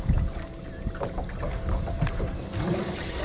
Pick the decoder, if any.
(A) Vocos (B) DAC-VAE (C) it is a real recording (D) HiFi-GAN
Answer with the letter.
C